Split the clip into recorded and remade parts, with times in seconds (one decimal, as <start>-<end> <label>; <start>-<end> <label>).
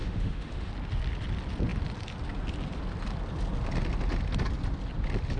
0.0-0.7 remade; 0.7-5.4 recorded